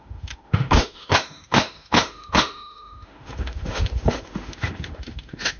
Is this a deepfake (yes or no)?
yes